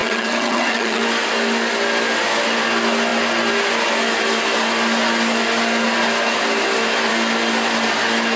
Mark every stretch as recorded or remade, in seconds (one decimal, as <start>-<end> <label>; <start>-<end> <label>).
0.0-1.0 remade; 1.0-8.4 recorded